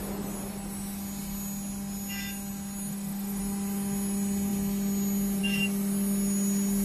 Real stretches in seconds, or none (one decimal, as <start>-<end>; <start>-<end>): 0.0-2.9; 3.4-6.8